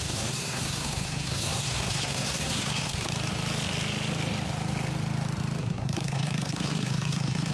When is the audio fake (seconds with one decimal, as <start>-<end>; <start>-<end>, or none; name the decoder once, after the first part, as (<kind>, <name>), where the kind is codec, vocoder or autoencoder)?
0.0-3.1 (codec, SNAC); 5.6-7.5